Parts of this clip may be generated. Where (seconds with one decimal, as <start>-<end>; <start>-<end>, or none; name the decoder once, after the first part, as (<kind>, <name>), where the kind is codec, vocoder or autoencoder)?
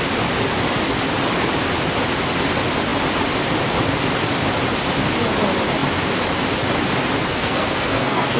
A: 7.4-8.4 (codec, SNAC)